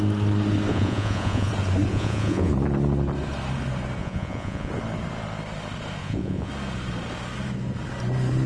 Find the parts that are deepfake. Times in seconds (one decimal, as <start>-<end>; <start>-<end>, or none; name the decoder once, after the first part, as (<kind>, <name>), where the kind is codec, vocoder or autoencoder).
0.7-1.5 (vocoder, Vocos); 1.9-2.5; 4.0-4.7; 6.0-6.5